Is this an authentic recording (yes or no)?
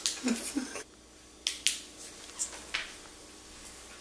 yes